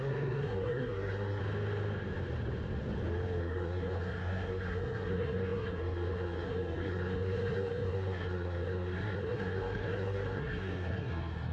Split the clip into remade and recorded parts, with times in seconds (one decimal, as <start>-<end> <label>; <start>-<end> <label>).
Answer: 0.0-1.4 remade; 1.4-3.4 recorded; 3.4-11.5 remade